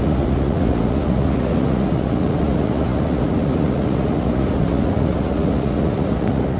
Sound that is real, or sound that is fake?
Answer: fake